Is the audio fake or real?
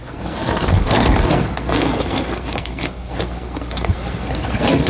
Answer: fake